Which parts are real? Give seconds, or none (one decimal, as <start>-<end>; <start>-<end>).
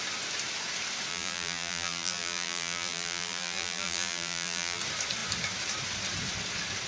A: 0.0-1.1; 4.8-6.9